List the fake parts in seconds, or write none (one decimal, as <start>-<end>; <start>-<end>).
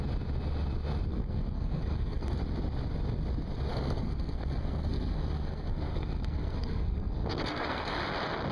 1.1-2.3; 3.7-8.0